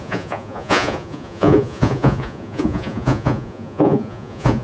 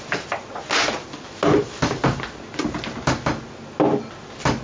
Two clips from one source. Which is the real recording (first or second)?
second